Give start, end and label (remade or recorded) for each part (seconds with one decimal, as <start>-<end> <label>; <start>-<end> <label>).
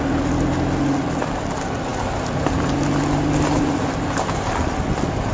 0.0-5.3 recorded